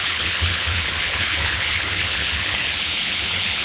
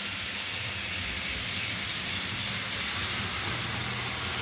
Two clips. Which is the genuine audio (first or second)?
second